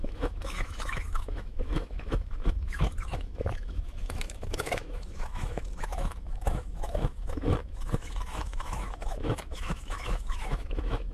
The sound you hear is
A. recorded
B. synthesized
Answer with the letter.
B